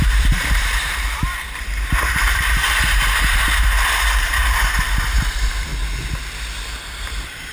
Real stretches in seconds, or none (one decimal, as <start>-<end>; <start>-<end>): 5.7-7.0